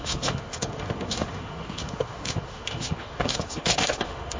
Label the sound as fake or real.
fake